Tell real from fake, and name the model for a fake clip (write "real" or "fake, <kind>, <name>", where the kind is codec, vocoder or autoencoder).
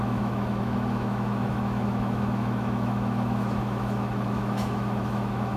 fake, autoencoder, DAC-VAE